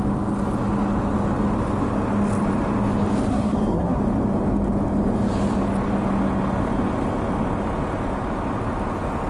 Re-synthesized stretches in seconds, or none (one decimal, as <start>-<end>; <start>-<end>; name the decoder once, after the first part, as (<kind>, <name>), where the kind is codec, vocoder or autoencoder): 3.3-4.0 (codec, SNAC)